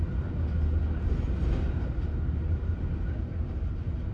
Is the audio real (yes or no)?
yes